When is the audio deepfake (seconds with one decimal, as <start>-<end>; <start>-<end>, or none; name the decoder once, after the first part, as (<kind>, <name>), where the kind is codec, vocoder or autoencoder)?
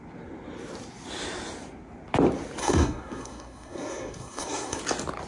2.6-4.8 (codec, SNAC)